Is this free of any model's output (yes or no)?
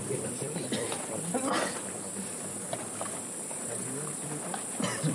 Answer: yes